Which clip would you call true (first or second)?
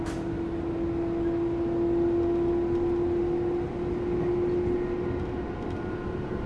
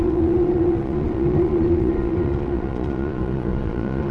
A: first